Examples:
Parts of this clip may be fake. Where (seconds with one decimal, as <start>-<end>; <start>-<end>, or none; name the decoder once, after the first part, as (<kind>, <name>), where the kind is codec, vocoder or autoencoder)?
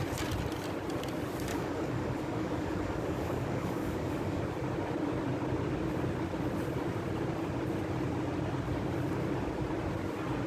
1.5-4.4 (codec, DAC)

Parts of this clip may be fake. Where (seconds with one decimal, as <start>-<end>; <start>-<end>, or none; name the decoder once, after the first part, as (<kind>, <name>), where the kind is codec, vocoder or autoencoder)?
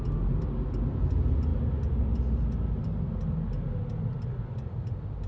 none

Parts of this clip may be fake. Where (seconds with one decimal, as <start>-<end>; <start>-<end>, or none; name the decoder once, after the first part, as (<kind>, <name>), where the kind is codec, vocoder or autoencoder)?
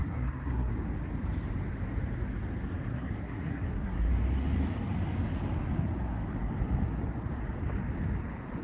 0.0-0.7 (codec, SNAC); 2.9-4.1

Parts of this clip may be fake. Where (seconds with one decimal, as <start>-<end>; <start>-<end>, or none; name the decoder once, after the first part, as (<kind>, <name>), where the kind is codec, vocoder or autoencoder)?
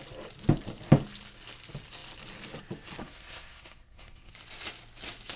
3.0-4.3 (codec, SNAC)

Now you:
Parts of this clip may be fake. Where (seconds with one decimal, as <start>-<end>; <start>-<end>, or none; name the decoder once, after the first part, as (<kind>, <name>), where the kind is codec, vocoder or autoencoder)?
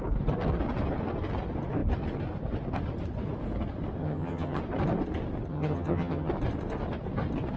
4.0-4.6 (vocoder, HiFi-GAN); 5.5-6.3